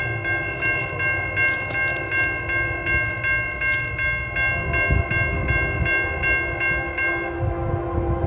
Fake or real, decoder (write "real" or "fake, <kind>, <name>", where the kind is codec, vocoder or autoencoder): real